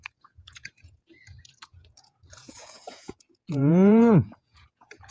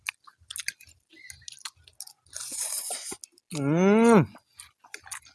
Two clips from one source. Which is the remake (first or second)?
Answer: first